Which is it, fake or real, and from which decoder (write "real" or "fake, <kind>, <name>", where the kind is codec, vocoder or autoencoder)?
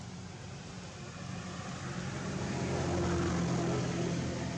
real